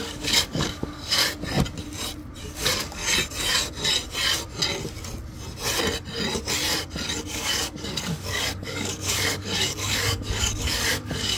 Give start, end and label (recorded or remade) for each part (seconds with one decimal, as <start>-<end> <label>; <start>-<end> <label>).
0.0-1.2 remade; 1.2-2.4 recorded; 2.4-3.0 remade; 3.0-7.2 recorded; 7.2-11.4 remade